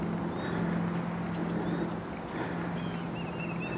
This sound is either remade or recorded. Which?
recorded